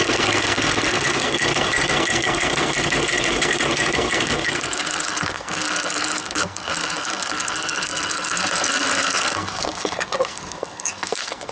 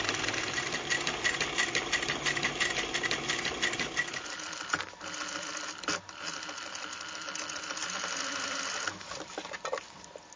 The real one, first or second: second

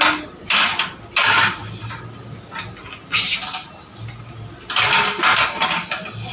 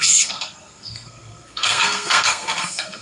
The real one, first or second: first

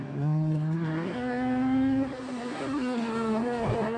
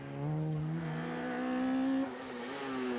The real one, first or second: second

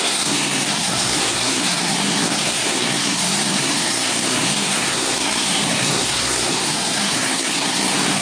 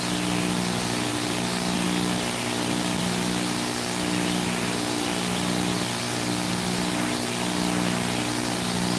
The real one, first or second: second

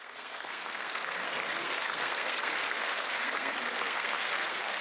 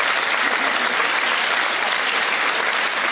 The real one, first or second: second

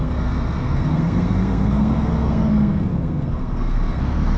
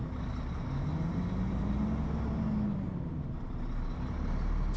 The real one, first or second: second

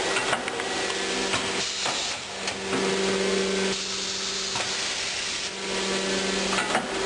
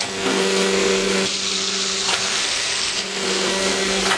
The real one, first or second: first